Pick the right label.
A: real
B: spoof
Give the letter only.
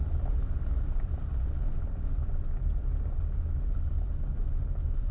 A